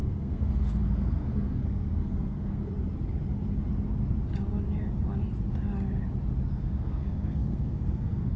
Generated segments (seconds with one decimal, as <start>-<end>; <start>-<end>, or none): 0.0-2.7; 6.5-8.4